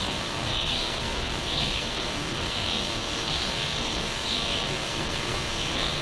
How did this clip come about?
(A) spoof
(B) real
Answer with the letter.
A